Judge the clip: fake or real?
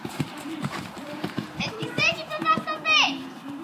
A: fake